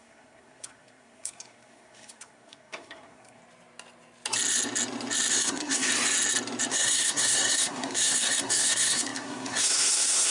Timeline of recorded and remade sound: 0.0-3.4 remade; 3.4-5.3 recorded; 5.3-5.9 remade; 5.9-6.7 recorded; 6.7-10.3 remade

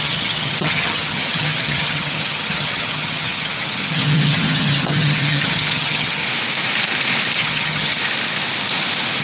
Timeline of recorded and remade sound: 0.0-6.2 remade; 6.2-7.4 recorded; 7.4-8.0 remade; 8.0-9.2 recorded

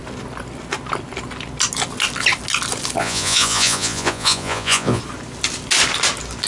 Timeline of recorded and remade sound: 0.0-3.0 recorded; 3.0-5.0 remade; 5.0-6.5 recorded